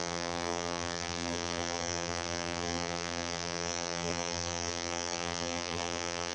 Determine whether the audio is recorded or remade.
remade